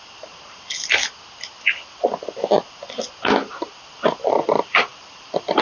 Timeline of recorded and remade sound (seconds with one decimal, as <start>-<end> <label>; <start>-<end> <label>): 0.0-1.0 remade; 1.0-4.3 recorded; 4.3-5.6 remade